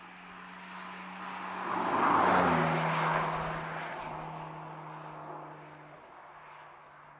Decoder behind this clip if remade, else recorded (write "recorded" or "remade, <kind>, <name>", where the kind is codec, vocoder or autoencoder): recorded